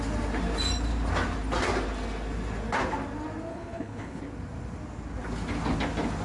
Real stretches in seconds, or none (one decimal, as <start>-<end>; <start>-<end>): 0.0-3.5; 4.2-6.2